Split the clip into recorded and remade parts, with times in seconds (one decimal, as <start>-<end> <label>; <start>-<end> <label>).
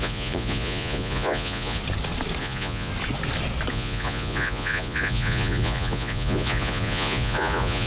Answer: 0.0-1.8 remade; 1.8-2.4 recorded; 2.4-2.9 remade; 2.9-3.7 recorded; 3.7-7.9 remade